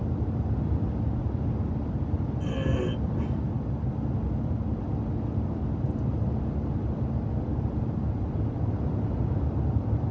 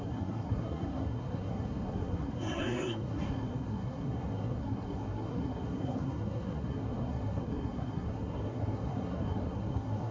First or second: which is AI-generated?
second